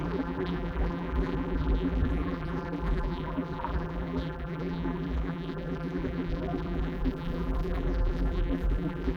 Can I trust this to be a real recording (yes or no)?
no